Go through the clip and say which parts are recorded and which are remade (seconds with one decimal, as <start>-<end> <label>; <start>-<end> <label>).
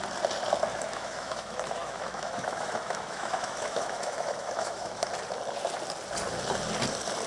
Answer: 0.0-0.7 recorded; 0.7-5.1 remade; 5.1-7.3 recorded